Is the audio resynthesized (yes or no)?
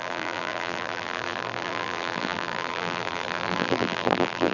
yes